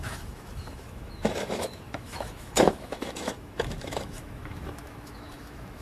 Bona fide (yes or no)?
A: no